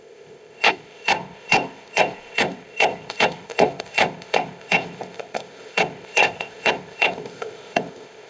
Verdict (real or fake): fake